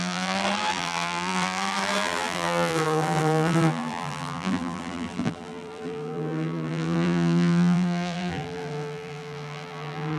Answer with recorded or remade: remade